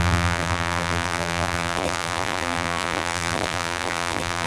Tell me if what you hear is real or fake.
fake